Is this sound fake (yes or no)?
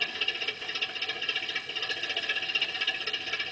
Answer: no